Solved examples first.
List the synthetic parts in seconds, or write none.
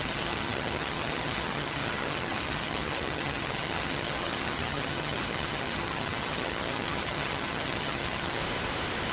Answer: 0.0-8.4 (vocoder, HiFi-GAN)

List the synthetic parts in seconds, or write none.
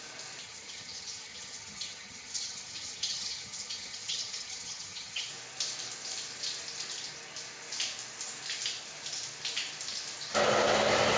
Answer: 0.4-5.3 (vocoder, HiFi-GAN)